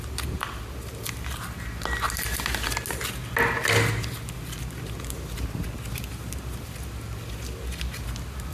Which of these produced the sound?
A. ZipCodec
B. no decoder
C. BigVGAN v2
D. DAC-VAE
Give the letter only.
B